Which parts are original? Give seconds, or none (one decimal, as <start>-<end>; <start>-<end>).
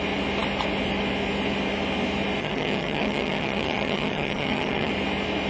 0.0-2.4; 4.9-5.5